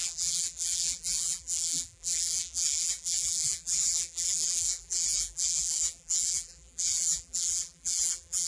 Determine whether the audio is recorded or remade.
remade